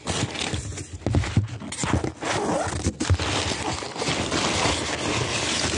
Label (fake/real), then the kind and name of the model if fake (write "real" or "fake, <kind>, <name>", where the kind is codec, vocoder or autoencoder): real